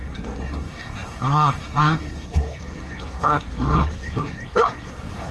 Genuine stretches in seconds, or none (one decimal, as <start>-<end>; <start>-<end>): none